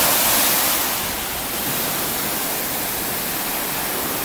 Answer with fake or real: fake